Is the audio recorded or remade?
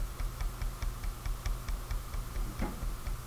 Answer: recorded